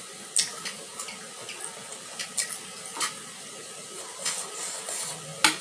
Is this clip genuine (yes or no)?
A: yes